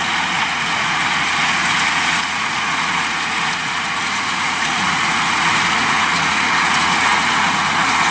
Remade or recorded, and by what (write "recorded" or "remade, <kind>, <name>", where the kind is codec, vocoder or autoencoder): remade, vocoder, Vocos